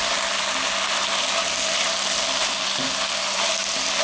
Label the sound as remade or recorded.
recorded